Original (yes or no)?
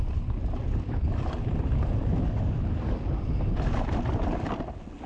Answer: yes